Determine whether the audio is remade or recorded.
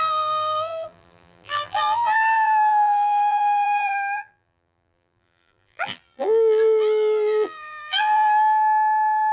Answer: remade